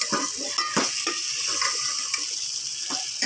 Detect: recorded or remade recorded